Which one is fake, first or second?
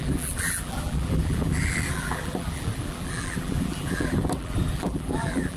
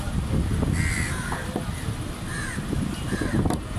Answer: first